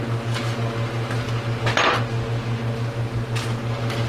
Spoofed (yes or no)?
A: no